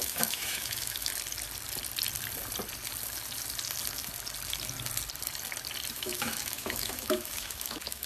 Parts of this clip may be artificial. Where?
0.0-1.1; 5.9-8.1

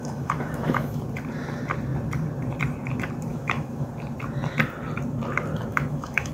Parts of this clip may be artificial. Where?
0.0-1.0; 3.3-3.9; 5.7-6.3